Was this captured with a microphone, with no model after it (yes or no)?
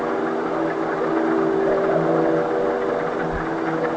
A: yes